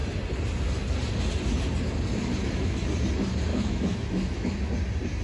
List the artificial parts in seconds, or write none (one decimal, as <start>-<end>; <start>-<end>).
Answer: 2.4-2.9; 3.5-4.6